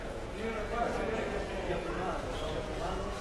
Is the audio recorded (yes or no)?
no